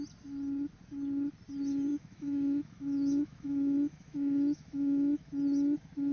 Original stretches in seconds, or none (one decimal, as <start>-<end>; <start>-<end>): 0.0-1.9; 5.3-6.1